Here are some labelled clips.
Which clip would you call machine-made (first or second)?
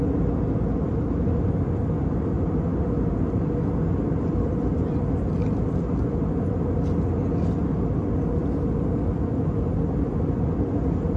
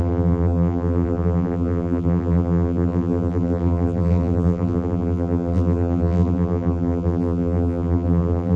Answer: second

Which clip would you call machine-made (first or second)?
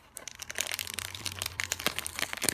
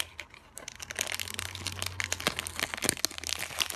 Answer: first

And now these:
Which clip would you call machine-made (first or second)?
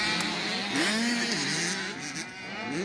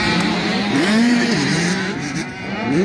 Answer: second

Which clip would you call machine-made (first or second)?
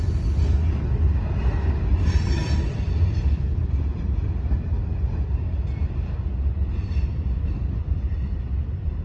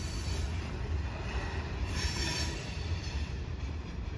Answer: second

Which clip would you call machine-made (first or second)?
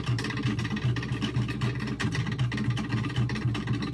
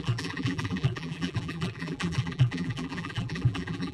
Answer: second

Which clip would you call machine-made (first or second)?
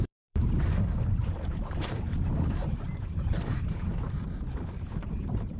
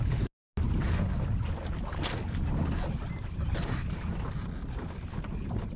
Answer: first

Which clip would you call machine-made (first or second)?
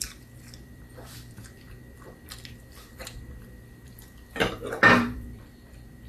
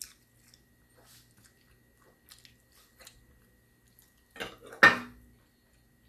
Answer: first